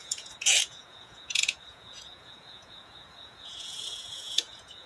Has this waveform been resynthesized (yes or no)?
yes